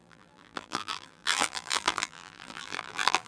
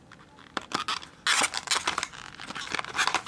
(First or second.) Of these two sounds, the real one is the second